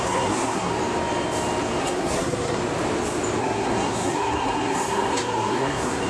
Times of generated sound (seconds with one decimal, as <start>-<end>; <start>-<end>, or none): 0.0-0.7; 1.8-2.6; 3.4-6.1